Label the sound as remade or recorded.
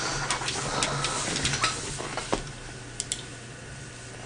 recorded